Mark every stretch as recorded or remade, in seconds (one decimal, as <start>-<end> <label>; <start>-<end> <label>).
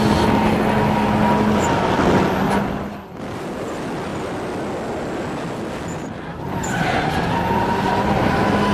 0.0-8.7 recorded